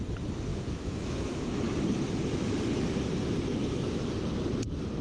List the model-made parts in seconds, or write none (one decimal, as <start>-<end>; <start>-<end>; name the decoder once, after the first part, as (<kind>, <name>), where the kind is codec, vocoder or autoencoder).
0.5-1.8 (autoencoder, DAC-VAE); 3.6-4.1